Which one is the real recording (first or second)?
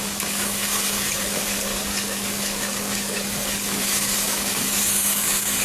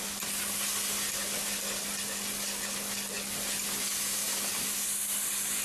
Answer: second